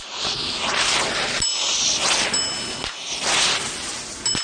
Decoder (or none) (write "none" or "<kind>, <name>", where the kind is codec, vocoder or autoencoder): none